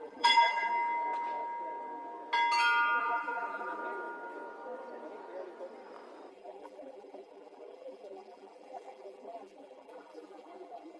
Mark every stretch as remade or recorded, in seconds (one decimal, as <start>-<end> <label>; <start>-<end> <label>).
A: 0.0-0.7 remade; 0.7-3.0 recorded; 3.0-3.8 remade; 3.8-6.3 recorded; 6.3-11.0 remade